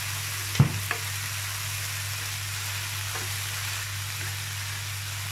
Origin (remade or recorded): recorded